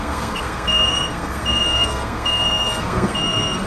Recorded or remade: remade